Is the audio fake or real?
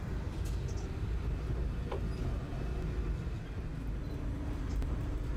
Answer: real